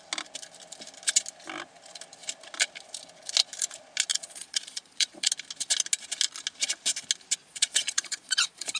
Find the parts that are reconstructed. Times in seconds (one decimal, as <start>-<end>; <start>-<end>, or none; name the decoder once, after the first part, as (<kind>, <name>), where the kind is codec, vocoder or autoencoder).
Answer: 4.1-5.3 (vocoder, Vocos); 7.4-8.8